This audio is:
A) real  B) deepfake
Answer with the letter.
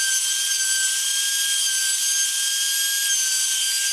A